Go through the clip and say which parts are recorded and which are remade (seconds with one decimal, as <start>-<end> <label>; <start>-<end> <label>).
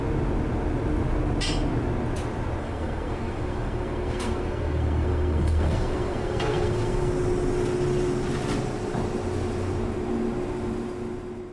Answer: 0.0-2.6 recorded; 2.6-7.1 remade; 7.1-11.5 recorded